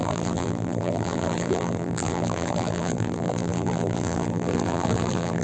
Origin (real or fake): fake